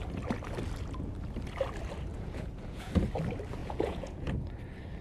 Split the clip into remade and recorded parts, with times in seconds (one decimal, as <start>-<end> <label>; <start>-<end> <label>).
0.0-2.1 recorded; 2.1-2.9 remade; 2.9-3.6 recorded; 3.6-4.3 remade; 4.3-5.0 recorded